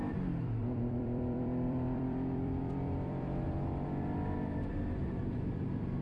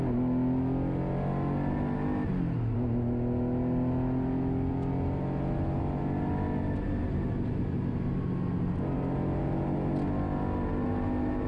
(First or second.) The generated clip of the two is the first